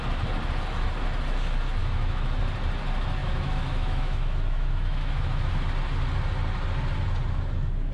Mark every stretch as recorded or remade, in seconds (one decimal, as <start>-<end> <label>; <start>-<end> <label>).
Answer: 0.0-1.8 recorded; 1.8-2.4 remade; 2.4-3.2 recorded; 3.2-5.5 remade; 5.5-7.9 recorded